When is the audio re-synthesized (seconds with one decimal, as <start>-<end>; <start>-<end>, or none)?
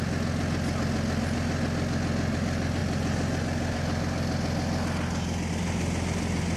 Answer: none